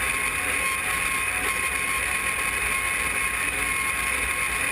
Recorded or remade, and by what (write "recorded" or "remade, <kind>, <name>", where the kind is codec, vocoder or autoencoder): recorded